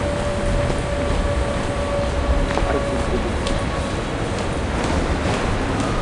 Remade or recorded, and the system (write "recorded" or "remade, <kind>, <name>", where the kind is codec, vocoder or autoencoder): recorded